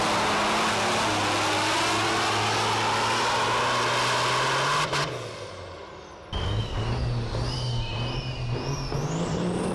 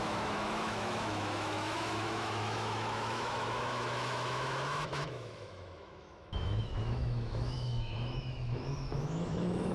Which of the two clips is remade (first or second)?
second